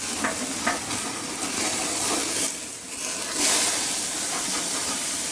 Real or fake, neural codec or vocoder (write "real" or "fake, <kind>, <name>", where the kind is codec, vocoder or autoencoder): real